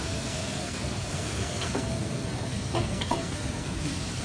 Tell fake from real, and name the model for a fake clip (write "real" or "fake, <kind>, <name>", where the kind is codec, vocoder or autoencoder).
fake, codec, SNAC